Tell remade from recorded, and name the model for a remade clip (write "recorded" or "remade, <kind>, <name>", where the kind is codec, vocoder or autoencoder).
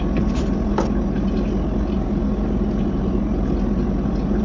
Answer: recorded